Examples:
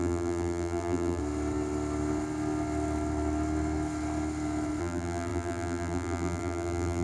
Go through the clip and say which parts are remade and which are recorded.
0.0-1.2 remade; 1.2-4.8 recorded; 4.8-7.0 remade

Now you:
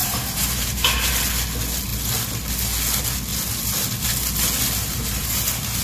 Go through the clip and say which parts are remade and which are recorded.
0.0-1.1 remade; 1.1-4.8 recorded; 4.8-5.8 remade

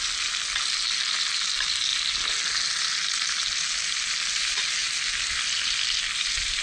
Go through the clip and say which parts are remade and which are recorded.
0.0-6.6 recorded

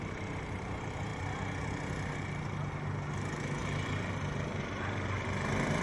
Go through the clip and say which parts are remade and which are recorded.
0.0-1.1 remade; 1.1-4.6 recorded; 4.6-5.8 remade

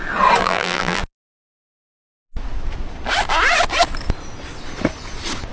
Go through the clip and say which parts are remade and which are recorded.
0.0-0.4 recorded; 0.4-1.0 remade; 1.0-5.5 recorded

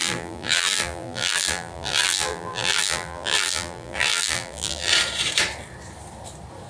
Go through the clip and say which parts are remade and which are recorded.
0.0-4.9 remade; 4.9-6.7 recorded

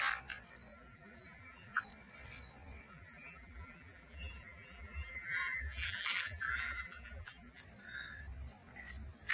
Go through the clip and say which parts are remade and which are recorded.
0.0-0.7 recorded; 0.7-1.8 remade; 1.8-2.9 recorded; 2.9-7.6 remade; 7.6-9.3 recorded

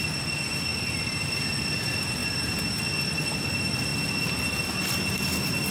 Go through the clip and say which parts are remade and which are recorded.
0.0-2.2 recorded; 2.2-2.8 remade; 2.8-5.7 recorded